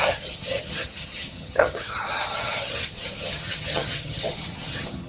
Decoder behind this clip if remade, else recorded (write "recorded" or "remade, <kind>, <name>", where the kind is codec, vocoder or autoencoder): remade, vocoder, HiFi-GAN